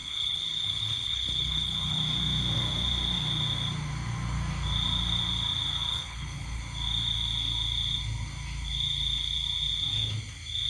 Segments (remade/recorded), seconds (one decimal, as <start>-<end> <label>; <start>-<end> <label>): 0.0-2.0 remade; 2.0-5.9 recorded; 5.9-6.6 remade; 6.6-10.7 recorded

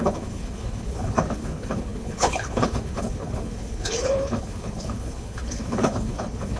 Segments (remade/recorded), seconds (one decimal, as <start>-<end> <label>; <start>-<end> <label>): 0.0-6.6 remade

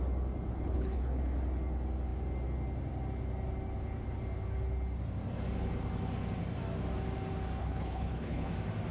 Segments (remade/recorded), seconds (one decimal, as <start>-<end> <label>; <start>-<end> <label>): 0.0-0.5 recorded; 0.5-1.2 remade; 1.2-7.6 recorded; 7.6-8.5 remade; 8.5-8.9 recorded

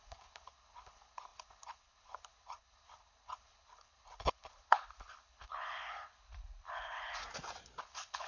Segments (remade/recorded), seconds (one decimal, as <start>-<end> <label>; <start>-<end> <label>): 0.0-7.2 remade; 7.2-7.8 recorded; 7.8-8.3 remade

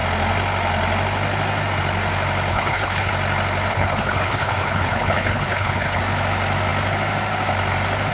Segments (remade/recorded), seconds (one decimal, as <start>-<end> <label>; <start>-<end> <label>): 0.0-2.5 recorded; 2.5-3.1 remade; 3.1-3.7 recorded; 3.7-6.0 remade; 6.0-8.1 recorded

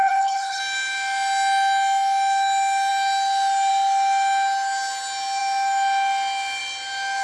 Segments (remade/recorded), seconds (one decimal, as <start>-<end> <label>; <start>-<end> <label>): 0.0-0.6 remade; 0.6-7.2 recorded